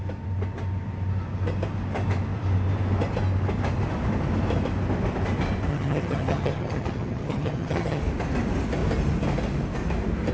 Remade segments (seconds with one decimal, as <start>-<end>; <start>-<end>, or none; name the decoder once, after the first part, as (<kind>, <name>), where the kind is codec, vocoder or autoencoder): 5.7-8.0 (vocoder, HiFi-GAN)